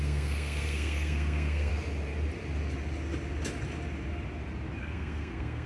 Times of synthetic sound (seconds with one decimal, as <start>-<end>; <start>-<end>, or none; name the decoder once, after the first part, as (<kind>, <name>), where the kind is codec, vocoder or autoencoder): 0.0-1.7 (codec, SNAC); 4.8-5.7